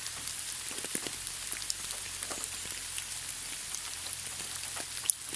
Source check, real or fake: real